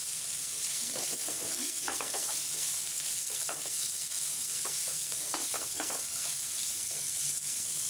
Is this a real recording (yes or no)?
no